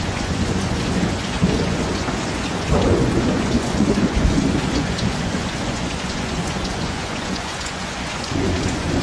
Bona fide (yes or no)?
no